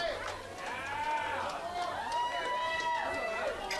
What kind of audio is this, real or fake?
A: real